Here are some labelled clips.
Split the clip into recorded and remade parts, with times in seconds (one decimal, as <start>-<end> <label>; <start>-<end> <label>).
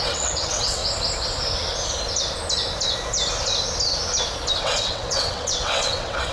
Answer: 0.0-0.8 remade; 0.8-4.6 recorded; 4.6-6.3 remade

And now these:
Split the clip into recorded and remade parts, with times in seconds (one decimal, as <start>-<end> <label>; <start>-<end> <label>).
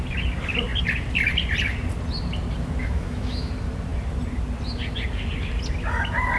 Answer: 0.0-2.8 recorded; 2.8-3.5 remade; 3.5-6.4 recorded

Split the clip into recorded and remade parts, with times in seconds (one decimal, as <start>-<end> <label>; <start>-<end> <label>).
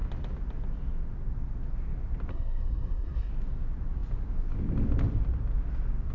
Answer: 0.0-2.3 recorded; 2.3-3.3 remade; 3.3-6.1 recorded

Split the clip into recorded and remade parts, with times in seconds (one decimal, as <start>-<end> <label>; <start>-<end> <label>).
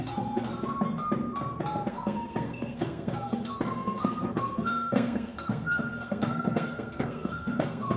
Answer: 0.0-0.5 remade; 0.5-1.9 recorded; 1.9-8.0 remade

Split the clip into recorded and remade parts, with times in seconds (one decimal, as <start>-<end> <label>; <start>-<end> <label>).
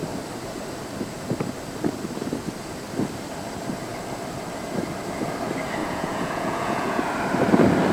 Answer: 0.0-5.8 recorded; 5.8-7.0 remade; 7.0-7.9 recorded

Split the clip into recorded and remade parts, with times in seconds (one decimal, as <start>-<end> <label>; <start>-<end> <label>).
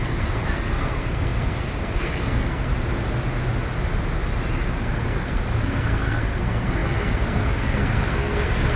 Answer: 0.0-2.7 remade; 2.7-4.8 recorded; 4.8-8.8 remade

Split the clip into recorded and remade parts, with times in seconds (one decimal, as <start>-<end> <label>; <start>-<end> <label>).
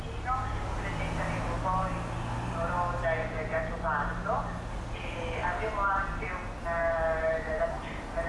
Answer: 0.0-8.3 recorded